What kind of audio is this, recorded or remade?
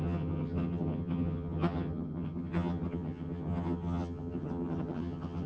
remade